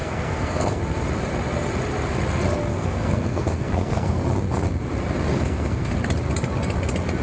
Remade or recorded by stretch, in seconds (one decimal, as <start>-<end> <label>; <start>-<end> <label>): 0.0-0.8 remade; 0.8-2.7 recorded; 2.7-4.2 remade; 4.2-5.3 recorded; 5.3-5.9 remade; 5.9-7.2 recorded